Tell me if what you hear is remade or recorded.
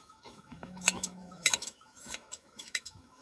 remade